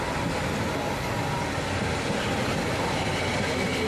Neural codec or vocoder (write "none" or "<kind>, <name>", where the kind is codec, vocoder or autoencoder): none